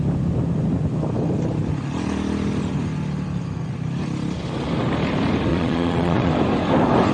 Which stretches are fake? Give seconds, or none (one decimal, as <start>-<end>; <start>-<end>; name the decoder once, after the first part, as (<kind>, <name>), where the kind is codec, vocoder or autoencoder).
5.5-6.3 (vocoder, Vocos)